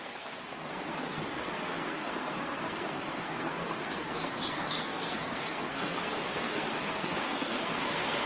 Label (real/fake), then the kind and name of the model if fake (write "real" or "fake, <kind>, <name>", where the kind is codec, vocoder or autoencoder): fake, codec, SNAC